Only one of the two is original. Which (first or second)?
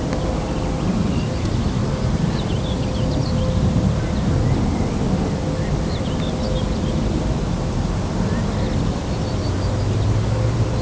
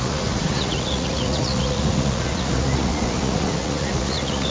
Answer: first